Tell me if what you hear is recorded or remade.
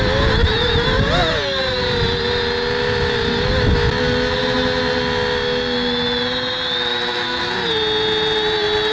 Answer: recorded